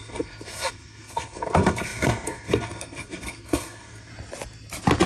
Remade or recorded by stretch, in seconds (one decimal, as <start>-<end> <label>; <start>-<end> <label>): 0.0-4.1 remade; 4.1-5.1 recorded